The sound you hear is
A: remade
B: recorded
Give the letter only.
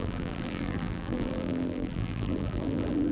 A